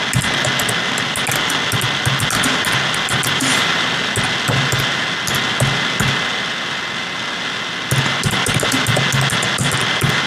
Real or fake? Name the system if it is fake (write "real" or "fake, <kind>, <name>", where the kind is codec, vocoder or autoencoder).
real